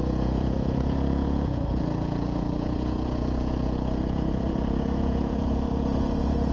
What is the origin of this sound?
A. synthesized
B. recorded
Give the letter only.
A